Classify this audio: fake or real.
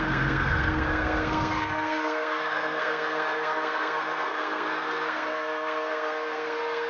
fake